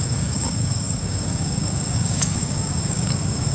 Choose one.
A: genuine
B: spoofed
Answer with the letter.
B